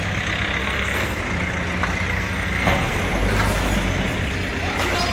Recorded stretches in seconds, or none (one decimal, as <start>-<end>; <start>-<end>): 0.0-0.6; 1.2-2.1; 3.0-5.1